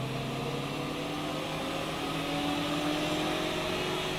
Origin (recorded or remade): recorded